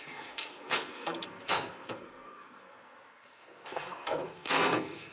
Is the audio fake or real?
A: fake